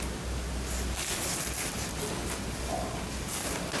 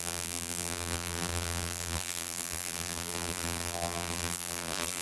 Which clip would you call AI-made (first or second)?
second